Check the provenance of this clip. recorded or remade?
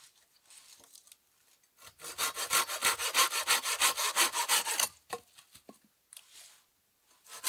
recorded